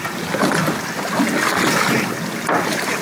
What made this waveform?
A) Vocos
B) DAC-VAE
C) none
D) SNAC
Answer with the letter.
C